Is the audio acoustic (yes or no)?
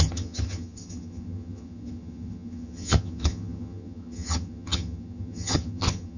no